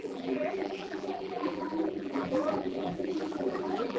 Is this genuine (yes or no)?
no